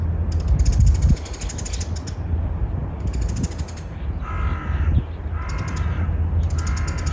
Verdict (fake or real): real